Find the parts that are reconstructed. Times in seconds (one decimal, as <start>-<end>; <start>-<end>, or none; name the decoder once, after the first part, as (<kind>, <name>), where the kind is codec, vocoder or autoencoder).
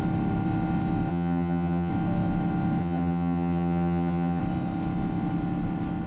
1.1-1.9 (vocoder, HiFi-GAN); 2.8-4.4